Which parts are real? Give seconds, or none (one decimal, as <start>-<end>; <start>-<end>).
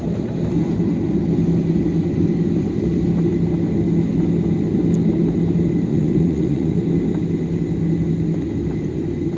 0.0-5.9; 6.8-9.4